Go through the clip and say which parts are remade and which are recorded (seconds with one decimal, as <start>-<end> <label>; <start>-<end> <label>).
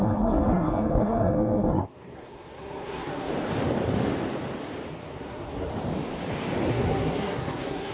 0.0-3.3 remade; 3.3-4.9 recorded; 4.9-5.7 remade; 5.7-6.7 recorded; 6.7-7.9 remade